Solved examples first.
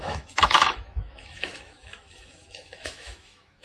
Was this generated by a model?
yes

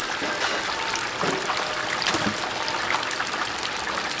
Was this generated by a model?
no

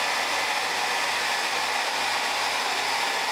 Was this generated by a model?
no